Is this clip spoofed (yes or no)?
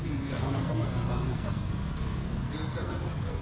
yes